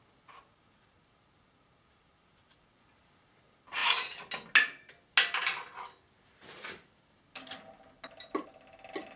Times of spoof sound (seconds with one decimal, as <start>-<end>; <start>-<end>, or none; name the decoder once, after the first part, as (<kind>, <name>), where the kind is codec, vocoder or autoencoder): none